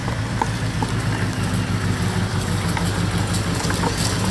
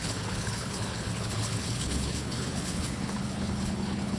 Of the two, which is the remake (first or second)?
second